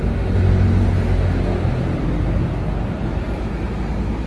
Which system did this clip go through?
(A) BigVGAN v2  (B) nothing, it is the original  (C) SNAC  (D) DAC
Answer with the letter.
B